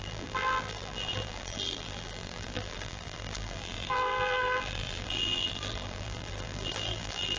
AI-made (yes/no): yes